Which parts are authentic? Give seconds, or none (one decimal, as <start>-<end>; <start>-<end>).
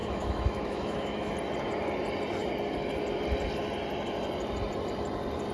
1.3-5.5